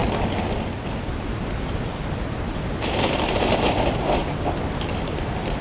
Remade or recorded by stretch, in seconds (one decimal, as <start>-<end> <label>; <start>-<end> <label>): 0.0-2.3 recorded; 2.3-4.2 remade; 4.2-4.9 recorded; 4.9-5.6 remade